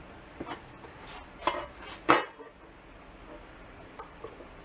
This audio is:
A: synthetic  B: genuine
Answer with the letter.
B